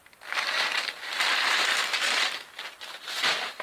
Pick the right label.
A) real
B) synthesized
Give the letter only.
A